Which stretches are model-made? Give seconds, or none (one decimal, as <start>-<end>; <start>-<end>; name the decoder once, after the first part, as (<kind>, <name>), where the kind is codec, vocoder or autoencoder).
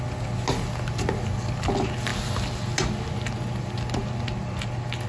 none